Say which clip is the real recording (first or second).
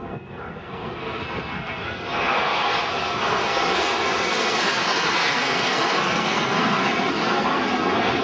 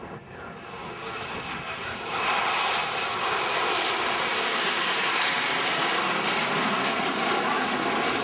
second